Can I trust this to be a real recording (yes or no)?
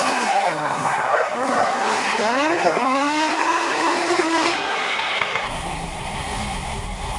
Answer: no